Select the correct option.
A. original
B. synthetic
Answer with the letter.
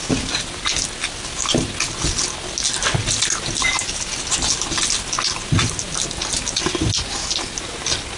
A